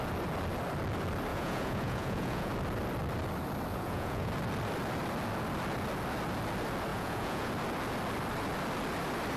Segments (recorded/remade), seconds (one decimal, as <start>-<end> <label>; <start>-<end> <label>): 0.0-1.3 recorded; 1.3-2.5 remade; 2.5-3.7 recorded; 3.7-4.3 remade; 4.3-6.9 recorded; 6.9-7.5 remade; 7.5-9.4 recorded

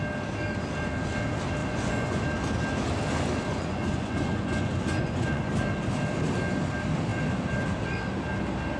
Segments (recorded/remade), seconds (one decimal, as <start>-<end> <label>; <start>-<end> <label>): 0.0-1.6 recorded; 1.6-2.2 remade; 2.2-3.5 recorded; 3.5-5.5 remade; 5.5-8.8 recorded

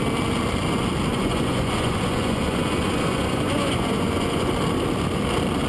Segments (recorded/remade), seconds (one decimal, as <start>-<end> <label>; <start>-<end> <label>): 0.0-1.1 recorded; 1.1-4.5 remade; 4.5-5.7 recorded

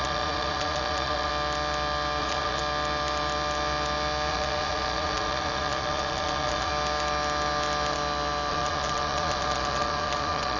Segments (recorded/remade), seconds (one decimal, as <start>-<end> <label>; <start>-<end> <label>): 0.0-1.3 remade; 1.3-2.2 recorded; 2.2-2.6 remade; 2.6-4.3 recorded; 4.3-6.7 remade; 6.7-8.5 recorded; 8.5-10.6 remade

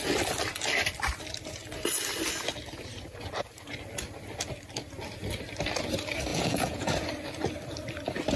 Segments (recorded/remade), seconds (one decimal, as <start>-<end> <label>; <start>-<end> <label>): 0.0-6.3 recorded; 6.3-6.9 remade; 6.9-8.4 recorded